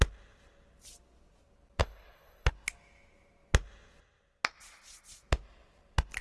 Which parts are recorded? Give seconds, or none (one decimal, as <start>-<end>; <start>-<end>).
0.0-1.8; 2.5-6.2

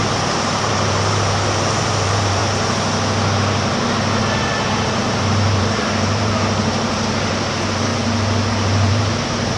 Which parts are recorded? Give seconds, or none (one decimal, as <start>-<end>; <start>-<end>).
2.4-4.6; 7.9-8.5

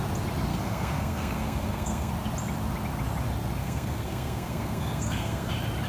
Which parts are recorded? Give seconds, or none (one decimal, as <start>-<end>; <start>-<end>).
0.0-0.5; 2.1-3.6; 5.5-5.9

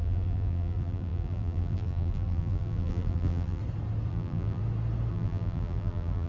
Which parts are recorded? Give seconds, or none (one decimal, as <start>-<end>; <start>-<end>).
3.6-4.1; 4.6-5.1

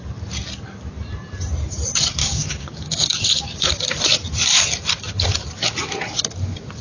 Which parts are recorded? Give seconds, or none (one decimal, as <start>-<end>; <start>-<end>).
0.0-2.2; 3.7-6.8

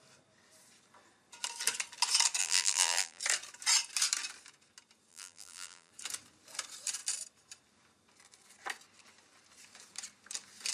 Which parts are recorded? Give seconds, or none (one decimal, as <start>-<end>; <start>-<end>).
0.0-2.4; 3.2-5.1; 5.9-10.7

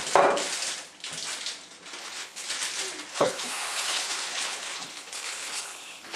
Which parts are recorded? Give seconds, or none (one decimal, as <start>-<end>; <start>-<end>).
0.0-2.0; 2.5-3.1

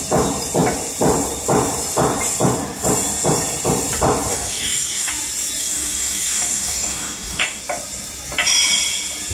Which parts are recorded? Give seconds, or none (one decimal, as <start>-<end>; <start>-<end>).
0.0-4.3; 5.1-5.6; 7.6-9.3